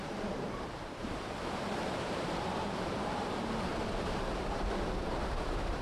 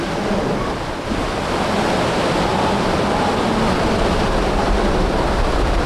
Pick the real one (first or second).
second